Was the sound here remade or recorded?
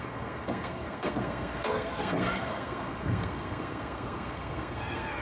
remade